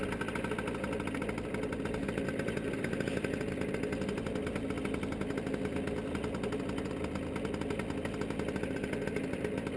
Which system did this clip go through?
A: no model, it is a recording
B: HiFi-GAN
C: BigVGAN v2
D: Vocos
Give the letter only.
A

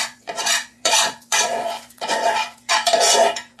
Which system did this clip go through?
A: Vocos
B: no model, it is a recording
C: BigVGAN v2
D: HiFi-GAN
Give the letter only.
A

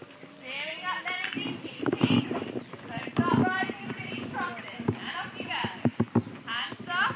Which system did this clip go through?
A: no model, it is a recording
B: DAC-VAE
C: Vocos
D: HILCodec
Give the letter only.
A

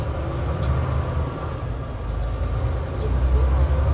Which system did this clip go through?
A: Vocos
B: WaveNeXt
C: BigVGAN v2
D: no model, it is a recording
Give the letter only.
D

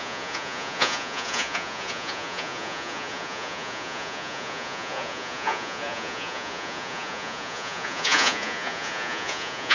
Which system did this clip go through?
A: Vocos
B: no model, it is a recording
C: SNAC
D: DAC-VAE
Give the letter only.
A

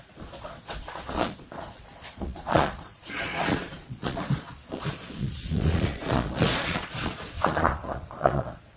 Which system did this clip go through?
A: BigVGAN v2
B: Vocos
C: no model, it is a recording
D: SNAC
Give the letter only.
B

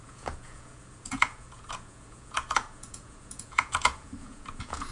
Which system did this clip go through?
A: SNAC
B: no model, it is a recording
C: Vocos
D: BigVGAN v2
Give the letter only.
C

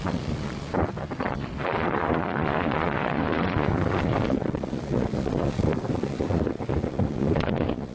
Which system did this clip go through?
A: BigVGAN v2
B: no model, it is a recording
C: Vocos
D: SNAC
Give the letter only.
C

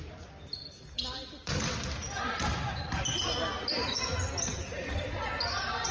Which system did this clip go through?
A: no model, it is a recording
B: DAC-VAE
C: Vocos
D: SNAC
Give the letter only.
A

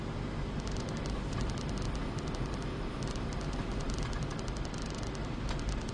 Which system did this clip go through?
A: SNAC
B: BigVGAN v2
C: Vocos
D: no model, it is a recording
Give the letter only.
D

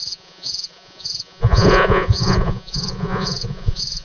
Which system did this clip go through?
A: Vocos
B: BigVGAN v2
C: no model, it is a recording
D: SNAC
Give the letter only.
A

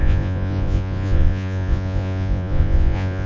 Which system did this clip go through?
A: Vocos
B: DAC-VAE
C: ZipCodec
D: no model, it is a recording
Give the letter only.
A